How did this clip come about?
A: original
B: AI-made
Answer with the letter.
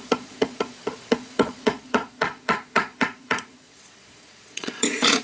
B